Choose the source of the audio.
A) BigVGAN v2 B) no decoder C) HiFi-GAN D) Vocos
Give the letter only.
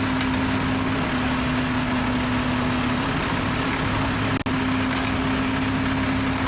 B